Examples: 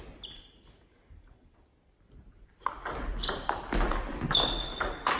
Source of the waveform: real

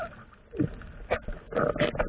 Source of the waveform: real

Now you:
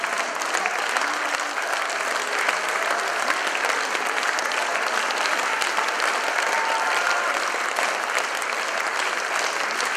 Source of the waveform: real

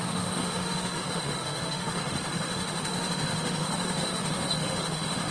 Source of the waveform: fake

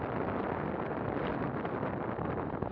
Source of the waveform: real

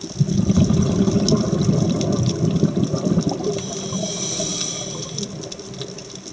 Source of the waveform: real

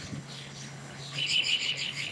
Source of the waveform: fake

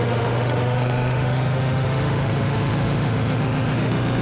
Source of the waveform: fake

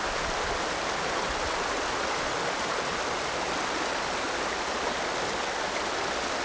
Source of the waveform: real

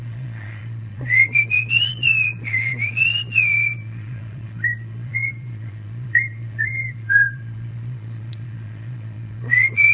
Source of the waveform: fake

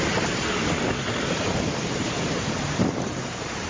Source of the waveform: fake